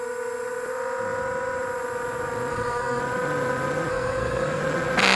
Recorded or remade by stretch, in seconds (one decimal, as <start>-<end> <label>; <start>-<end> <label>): 0.0-2.5 recorded; 2.5-3.0 remade; 3.0-3.9 recorded; 3.9-4.6 remade; 4.6-5.2 recorded